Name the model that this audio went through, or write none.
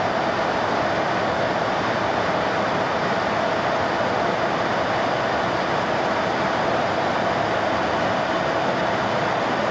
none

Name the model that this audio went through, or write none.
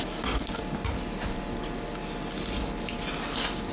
none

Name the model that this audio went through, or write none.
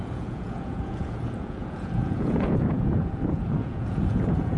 vocoder, Vocos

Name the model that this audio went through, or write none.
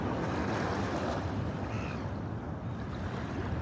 none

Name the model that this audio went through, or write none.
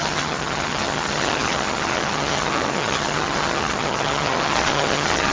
vocoder, HiFi-GAN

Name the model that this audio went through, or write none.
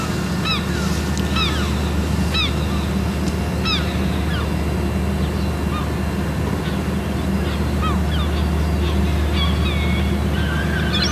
none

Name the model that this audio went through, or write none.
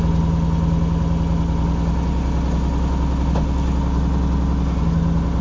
none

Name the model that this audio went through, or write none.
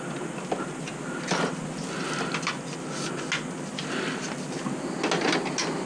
none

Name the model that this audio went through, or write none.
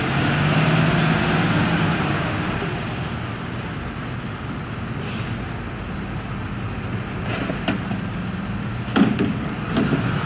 none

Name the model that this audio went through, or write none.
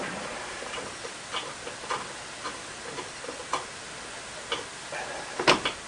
none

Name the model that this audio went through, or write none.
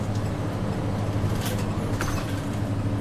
none